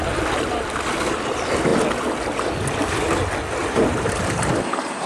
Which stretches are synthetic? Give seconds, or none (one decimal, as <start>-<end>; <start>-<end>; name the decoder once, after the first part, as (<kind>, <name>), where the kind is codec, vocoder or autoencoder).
3.6-5.1 (vocoder, BigVGAN v2)